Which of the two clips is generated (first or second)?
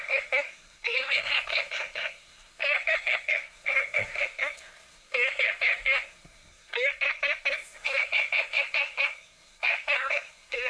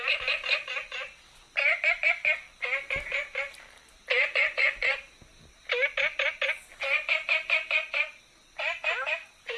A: first